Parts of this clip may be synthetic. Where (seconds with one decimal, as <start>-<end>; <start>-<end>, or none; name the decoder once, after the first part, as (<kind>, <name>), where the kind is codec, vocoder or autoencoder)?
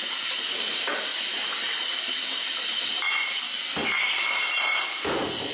0.0-1.1 (vocoder, BigVGAN v2); 2.1-2.9